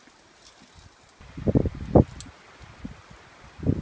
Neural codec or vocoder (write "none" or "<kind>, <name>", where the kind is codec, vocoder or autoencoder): none